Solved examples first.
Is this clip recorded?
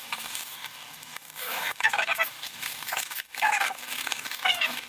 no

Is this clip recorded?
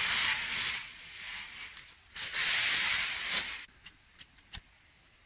yes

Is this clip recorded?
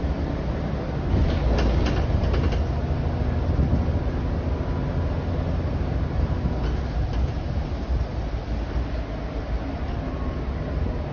yes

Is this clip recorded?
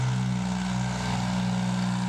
yes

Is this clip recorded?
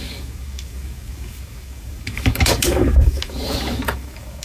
no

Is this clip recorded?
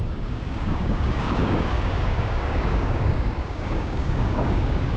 no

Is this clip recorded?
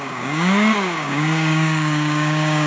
no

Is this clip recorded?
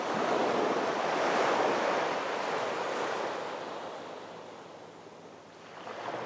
yes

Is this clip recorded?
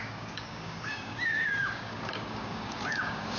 no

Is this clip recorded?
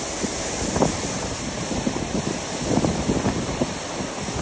yes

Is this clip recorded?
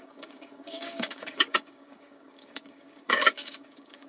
no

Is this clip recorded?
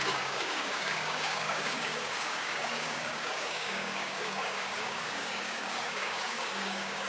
no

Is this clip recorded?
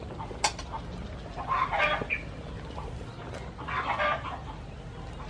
yes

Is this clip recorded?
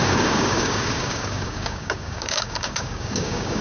no